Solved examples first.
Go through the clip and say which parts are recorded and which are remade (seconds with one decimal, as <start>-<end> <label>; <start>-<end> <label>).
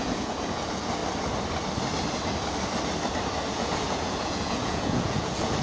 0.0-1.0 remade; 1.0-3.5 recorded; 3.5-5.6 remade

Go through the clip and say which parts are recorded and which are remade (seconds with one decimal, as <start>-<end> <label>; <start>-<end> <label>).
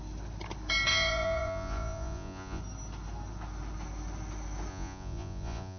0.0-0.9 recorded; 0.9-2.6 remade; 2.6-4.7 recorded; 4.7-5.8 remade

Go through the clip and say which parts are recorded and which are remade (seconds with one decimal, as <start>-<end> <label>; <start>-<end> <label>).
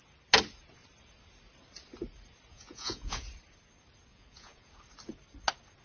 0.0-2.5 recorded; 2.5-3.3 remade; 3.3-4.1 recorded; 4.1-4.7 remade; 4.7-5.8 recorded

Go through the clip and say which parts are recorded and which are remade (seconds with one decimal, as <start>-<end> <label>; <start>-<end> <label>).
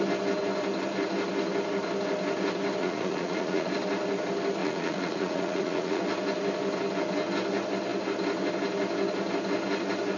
0.0-2.8 recorded; 2.8-3.7 remade; 3.7-4.6 recorded; 4.6-6.0 remade; 6.0-10.2 recorded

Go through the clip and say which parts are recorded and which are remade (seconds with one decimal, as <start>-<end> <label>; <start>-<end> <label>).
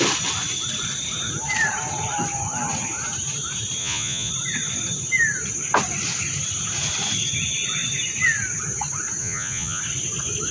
0.0-3.8 recorded; 3.8-4.3 remade; 4.3-9.2 recorded; 9.2-9.8 remade; 9.8-10.5 recorded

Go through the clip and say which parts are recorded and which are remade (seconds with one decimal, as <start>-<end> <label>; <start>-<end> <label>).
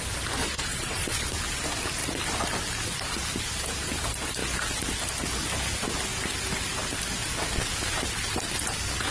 0.0-0.4 recorded; 0.4-1.3 remade; 1.3-9.1 recorded